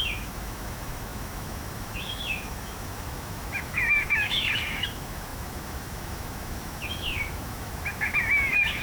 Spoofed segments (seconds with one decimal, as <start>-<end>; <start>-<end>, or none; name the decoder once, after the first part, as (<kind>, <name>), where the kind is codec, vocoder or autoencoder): 0.0-8.8 (autoencoder, DAC-VAE)